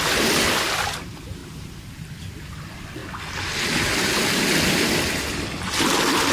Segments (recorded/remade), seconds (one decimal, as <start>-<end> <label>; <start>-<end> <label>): 0.0-1.4 remade; 1.4-1.9 recorded; 1.9-3.0 remade; 3.0-4.7 recorded; 4.7-6.3 remade